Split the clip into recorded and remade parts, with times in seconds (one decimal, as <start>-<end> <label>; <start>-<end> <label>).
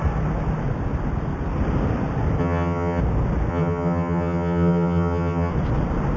0.0-2.4 recorded; 2.4-3.0 remade; 3.0-3.5 recorded; 3.5-5.5 remade; 5.5-6.2 recorded